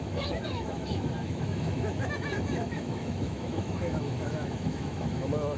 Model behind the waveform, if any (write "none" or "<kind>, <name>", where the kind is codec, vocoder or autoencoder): autoencoder, DAC-VAE